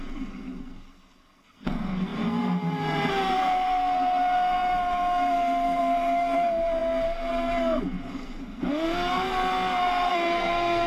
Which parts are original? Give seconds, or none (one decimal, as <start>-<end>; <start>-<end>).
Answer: none